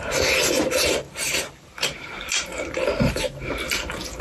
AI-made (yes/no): yes